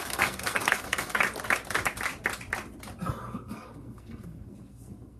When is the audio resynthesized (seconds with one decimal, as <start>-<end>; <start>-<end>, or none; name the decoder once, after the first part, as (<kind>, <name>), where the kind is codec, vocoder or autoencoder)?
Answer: 0.0-1.1 (codec, SNAC); 3.2-5.2

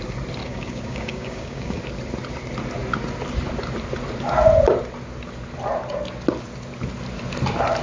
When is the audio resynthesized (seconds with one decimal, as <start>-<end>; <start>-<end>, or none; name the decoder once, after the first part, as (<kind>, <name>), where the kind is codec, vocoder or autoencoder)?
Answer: 0.4-1.8 (codec, DAC)

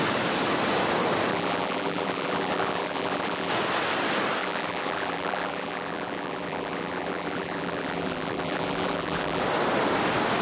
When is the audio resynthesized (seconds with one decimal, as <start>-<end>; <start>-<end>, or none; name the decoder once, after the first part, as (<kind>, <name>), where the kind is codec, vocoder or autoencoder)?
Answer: 1.3-3.5 (vocoder, BigVGAN v2); 4.4-9.4

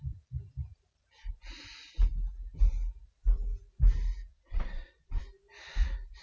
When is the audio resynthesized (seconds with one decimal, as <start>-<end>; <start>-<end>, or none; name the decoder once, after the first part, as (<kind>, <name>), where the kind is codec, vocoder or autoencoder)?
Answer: 4.3-5.2 (vocoder, Vocos)

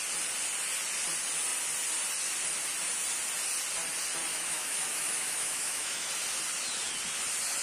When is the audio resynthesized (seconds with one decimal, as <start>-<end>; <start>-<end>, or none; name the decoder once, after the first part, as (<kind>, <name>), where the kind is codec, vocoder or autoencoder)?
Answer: 4.3-6.1 (autoencoder, DAC-VAE)

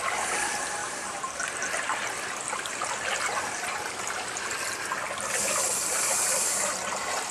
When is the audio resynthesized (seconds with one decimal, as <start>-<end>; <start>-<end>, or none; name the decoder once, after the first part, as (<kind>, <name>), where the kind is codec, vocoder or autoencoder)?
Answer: 0.8-1.5 (vocoder, BigVGAN v2)

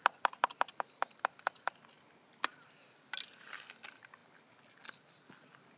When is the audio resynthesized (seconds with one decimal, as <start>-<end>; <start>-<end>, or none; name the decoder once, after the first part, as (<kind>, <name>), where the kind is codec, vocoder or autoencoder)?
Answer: none

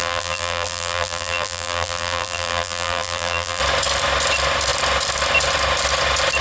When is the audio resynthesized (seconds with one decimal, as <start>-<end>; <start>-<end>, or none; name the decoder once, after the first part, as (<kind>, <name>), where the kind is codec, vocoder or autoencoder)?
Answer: 0.0-3.6 (vocoder, BigVGAN v2)